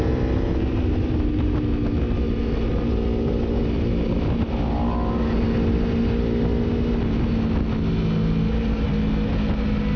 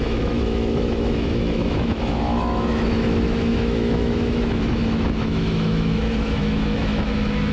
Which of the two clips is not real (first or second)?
second